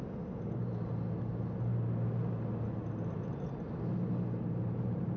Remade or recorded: recorded